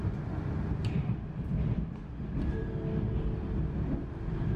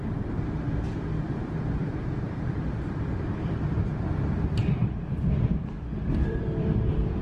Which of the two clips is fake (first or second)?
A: second